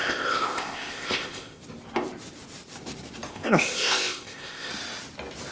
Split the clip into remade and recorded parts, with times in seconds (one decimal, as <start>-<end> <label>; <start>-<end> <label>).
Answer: 0.0-1.6 remade; 1.6-3.3 recorded; 3.3-4.7 remade; 4.7-5.5 recorded